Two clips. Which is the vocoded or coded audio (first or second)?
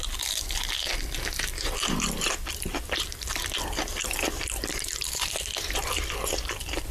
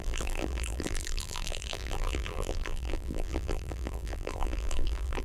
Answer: second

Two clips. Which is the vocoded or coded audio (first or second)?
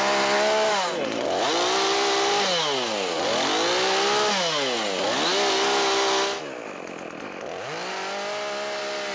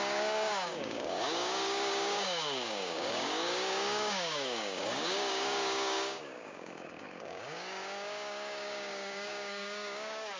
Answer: second